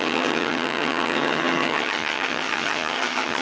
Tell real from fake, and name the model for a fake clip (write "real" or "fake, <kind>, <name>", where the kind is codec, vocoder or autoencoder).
fake, vocoder, HiFi-GAN